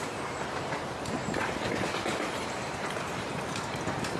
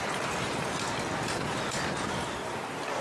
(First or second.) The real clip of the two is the second